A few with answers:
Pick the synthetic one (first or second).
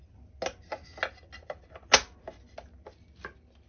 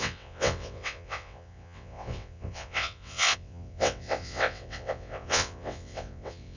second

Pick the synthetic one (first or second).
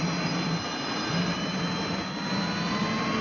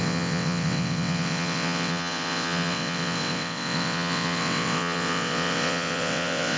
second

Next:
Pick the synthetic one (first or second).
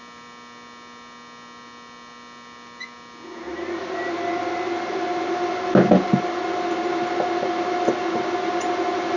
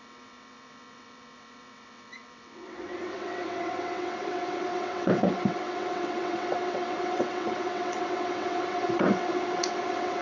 second